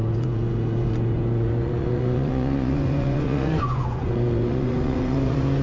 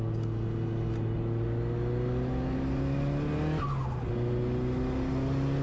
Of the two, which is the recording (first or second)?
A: second